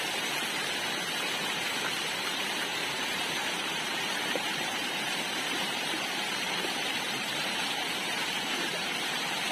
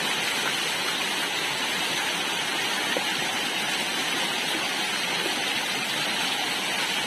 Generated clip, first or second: first